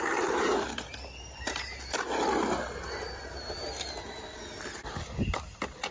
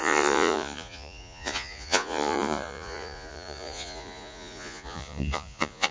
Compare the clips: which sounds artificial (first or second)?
second